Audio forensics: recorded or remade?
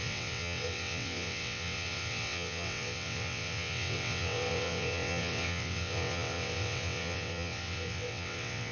remade